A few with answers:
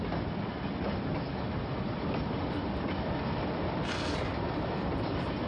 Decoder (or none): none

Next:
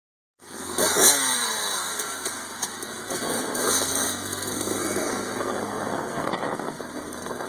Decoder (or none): codec, SNAC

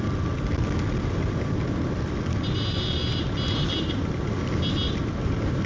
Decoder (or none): none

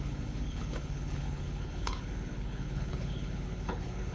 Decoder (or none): codec, HILCodec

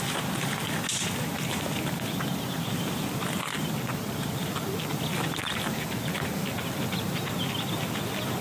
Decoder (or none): none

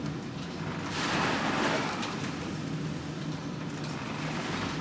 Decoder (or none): none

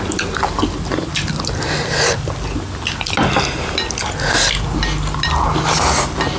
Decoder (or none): none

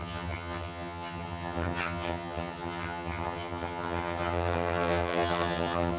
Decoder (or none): vocoder, HiFi-GAN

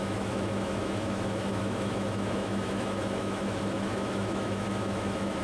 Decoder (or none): autoencoder, DAC-VAE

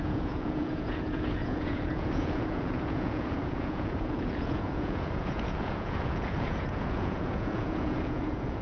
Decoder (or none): vocoder, Vocos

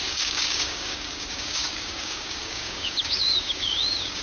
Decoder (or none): codec, DAC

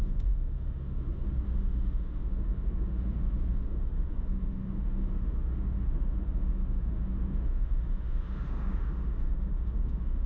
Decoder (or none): autoencoder, DAC-VAE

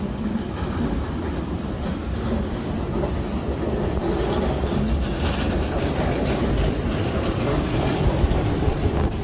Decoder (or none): none